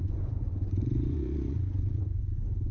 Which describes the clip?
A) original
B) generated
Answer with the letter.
B